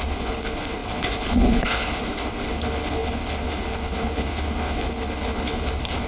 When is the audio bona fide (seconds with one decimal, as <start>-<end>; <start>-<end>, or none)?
none